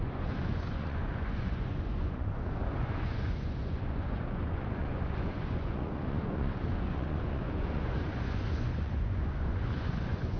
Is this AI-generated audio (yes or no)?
yes